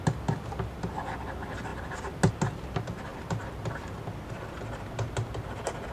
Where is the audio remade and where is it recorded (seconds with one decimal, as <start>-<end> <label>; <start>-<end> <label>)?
0.0-3.1 recorded; 3.1-4.5 remade; 4.5-5.9 recorded